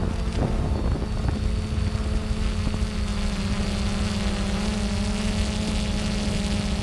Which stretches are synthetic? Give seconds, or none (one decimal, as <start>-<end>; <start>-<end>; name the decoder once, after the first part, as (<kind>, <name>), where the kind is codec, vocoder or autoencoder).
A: none